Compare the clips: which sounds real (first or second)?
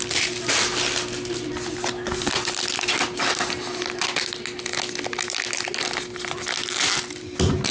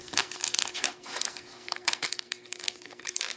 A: first